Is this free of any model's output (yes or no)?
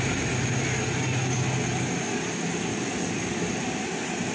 yes